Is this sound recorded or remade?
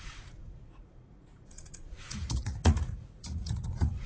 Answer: remade